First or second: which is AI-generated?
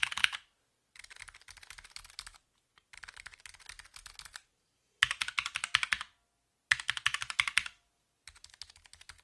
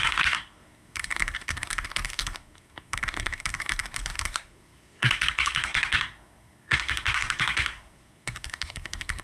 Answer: second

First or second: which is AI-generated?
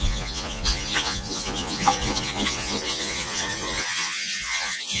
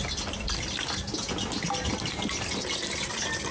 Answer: first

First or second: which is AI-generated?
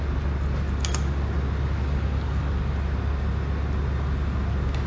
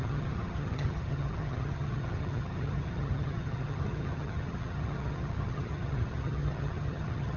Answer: second